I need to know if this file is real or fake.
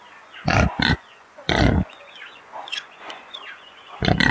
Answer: fake